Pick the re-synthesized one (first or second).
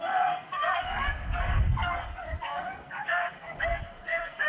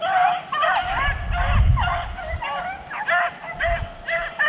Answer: first